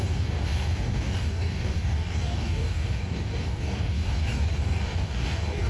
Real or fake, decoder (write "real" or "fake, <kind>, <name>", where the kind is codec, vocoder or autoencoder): fake, codec, DAC